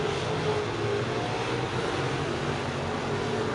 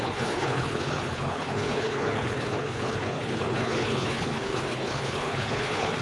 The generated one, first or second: second